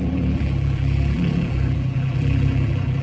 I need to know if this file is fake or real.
fake